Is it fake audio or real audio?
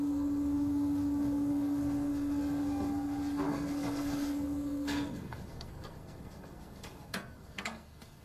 fake